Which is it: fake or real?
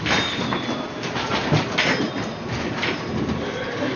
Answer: real